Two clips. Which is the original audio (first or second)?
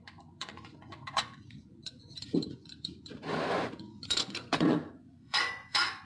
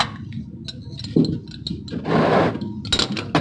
second